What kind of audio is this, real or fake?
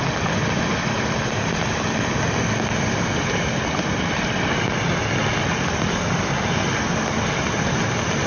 real